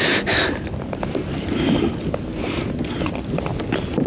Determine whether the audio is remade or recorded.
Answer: recorded